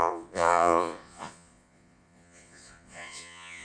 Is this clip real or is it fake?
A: fake